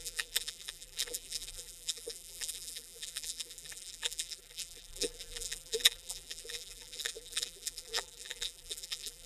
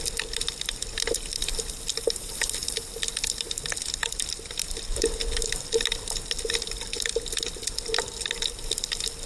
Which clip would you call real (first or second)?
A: second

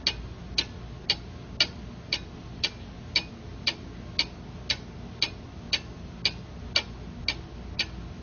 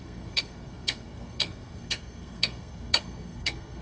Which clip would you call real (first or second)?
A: first